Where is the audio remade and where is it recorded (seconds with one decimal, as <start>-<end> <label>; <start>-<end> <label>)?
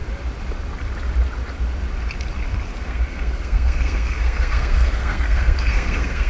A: 0.0-2.7 recorded; 2.7-6.3 remade